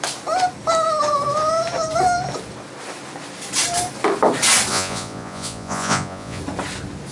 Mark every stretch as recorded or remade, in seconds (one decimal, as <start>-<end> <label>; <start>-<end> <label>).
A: 0.0-4.7 recorded; 4.7-6.4 remade; 6.4-7.1 recorded